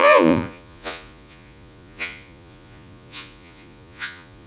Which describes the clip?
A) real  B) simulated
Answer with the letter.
B